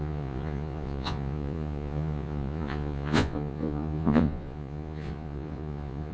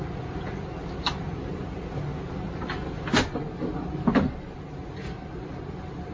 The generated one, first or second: first